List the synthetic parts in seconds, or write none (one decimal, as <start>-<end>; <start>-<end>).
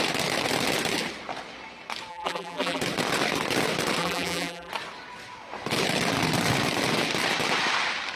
2.1-2.8; 4.0-4.7